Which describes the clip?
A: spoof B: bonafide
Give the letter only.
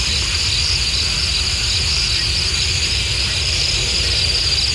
B